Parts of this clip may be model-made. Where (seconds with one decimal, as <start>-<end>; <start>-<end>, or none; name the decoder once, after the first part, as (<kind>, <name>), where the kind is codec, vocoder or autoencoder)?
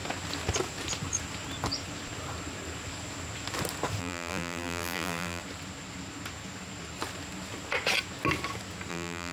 4.0-5.4 (vocoder, BigVGAN v2); 8.9-9.3